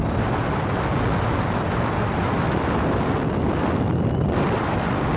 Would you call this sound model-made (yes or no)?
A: no